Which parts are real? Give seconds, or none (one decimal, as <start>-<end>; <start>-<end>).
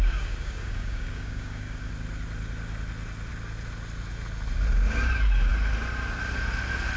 1.9-7.0